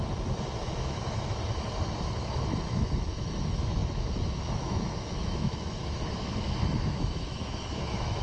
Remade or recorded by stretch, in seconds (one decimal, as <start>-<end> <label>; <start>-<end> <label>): 0.0-0.6 recorded; 0.6-1.4 remade; 1.4-2.0 recorded; 2.0-8.2 remade